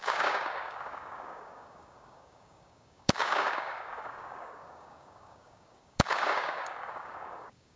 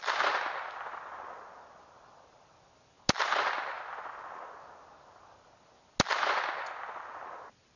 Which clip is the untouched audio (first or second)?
second